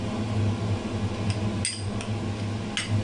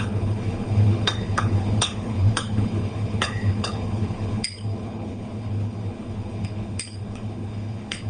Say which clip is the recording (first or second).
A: first